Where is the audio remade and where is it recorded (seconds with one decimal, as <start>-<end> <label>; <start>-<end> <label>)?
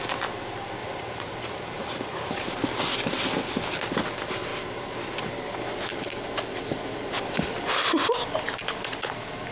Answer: 0.0-0.8 recorded; 0.8-2.5 remade; 2.5-9.5 recorded